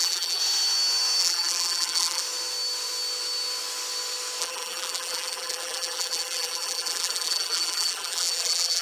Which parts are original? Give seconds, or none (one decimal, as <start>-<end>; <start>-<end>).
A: 0.4-1.2; 2.2-4.4